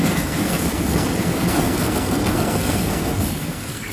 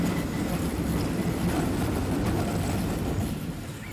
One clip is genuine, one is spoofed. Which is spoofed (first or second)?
first